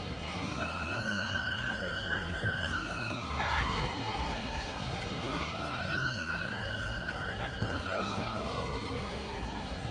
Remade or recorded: remade